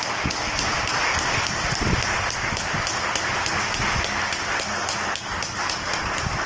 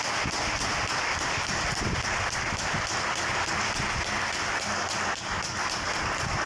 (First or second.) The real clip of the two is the first